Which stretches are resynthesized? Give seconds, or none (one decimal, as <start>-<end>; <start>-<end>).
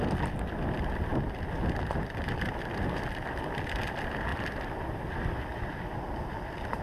none